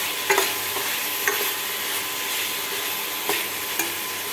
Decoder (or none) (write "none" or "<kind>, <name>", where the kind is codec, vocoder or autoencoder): none